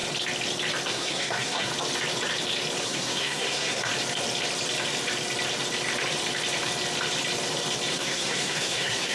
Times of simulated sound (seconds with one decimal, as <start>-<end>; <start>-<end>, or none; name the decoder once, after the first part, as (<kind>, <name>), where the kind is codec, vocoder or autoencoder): 0.9-1.7 (codec, SNAC); 2.8-3.9; 7.9-9.1